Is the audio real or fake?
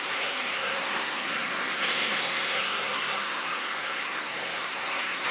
fake